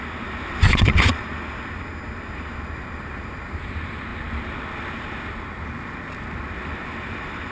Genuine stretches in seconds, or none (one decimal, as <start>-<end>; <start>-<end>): 0.0-0.6; 1.3-7.5